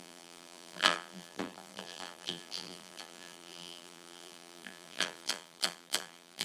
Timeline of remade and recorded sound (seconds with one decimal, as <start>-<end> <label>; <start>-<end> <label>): 0.0-6.4 remade